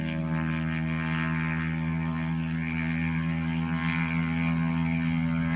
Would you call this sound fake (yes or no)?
no